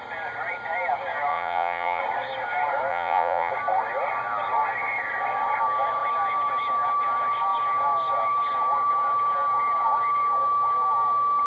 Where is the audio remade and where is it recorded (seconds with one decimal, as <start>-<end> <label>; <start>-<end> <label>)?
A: 0.0-1.3 recorded; 1.3-2.0 remade; 2.0-2.9 recorded; 2.9-3.5 remade; 3.5-11.5 recorded